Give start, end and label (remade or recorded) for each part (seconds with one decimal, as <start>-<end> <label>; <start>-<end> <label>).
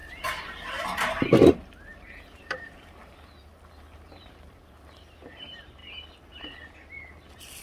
0.0-5.8 remade; 5.8-7.6 recorded